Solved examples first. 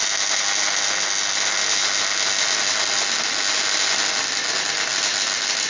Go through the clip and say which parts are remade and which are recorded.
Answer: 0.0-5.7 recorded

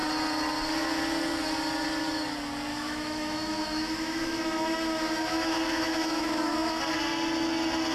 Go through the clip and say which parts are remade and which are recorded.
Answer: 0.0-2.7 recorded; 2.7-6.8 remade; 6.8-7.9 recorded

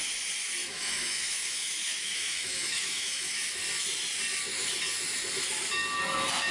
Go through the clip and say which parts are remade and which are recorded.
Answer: 0.0-0.6 recorded; 0.6-3.4 remade; 3.4-6.5 recorded